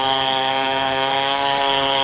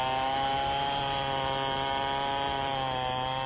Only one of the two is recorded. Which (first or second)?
second